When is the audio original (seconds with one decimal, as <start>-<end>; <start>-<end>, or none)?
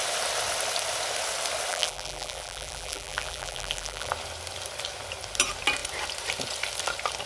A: 0.0-1.7; 4.1-7.3